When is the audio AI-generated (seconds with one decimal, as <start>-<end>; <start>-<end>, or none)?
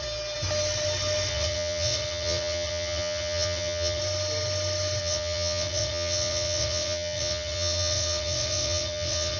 1.3-4.0; 5.0-9.4